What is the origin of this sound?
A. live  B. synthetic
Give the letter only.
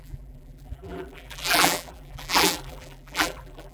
B